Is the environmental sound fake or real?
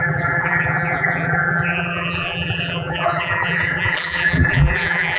fake